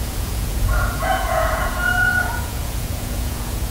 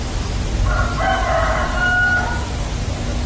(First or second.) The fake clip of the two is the first